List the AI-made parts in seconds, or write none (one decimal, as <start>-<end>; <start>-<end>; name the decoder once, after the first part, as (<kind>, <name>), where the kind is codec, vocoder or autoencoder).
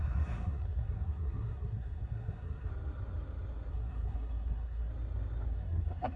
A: 0.0-2.7 (codec, SNAC); 3.7-4.9; 5.5-6.2